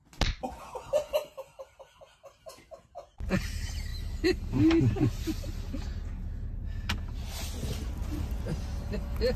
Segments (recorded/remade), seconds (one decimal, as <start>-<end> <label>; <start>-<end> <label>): 0.0-9.4 recorded